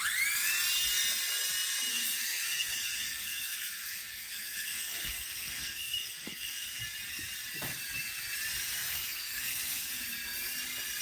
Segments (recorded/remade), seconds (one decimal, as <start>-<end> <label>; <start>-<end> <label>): 0.0-1.9 recorded; 1.9-6.8 remade; 6.8-8.9 recorded; 8.9-10.0 remade; 10.0-11.0 recorded